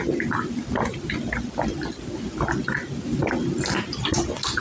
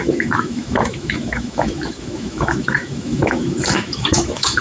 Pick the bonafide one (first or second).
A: first